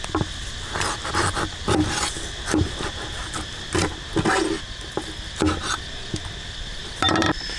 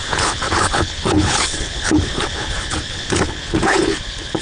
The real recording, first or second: first